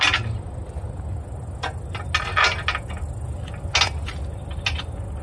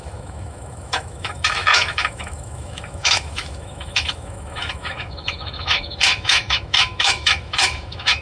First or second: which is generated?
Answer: second